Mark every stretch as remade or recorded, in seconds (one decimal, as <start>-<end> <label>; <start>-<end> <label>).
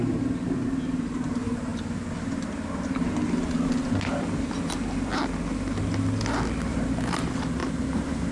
0.0-1.7 remade; 1.7-6.6 recorded; 6.6-8.3 remade